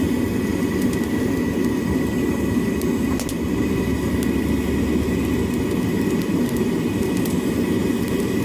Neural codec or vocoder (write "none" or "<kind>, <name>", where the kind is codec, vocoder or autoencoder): none